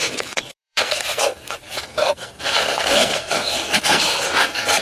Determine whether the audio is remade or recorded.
remade